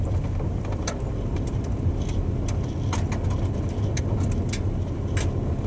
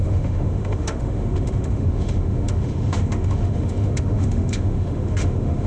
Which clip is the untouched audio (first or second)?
first